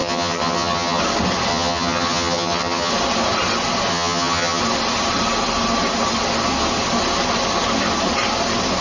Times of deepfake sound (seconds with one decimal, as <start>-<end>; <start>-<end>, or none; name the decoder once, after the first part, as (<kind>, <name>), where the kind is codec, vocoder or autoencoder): 0.0-1.0 (vocoder, HiFi-GAN); 1.5-2.9; 3.9-4.6